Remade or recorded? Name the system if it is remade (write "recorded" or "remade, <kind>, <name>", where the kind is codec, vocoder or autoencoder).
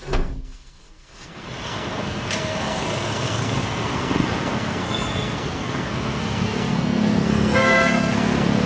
remade, codec, SNAC